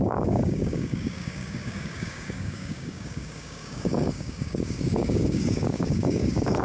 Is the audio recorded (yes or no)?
no